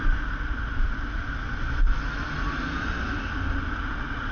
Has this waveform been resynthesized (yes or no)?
no